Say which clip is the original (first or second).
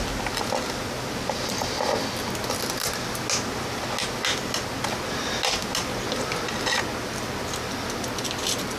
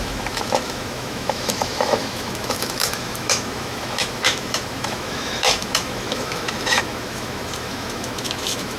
first